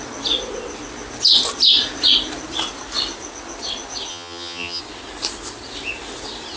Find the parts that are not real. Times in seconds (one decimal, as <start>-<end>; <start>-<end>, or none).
4.1-4.8